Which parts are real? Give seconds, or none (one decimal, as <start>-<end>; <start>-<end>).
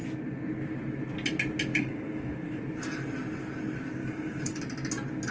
0.0-1.7; 2.6-4.0; 4.6-5.3